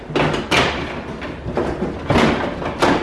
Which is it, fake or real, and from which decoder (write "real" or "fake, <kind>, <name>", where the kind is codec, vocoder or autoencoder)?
real